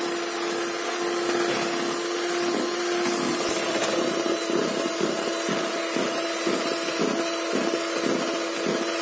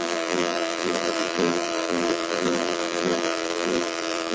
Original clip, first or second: first